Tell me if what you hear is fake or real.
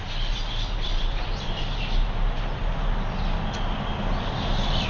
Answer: real